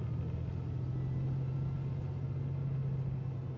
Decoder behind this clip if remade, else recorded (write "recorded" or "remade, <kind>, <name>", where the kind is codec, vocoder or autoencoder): recorded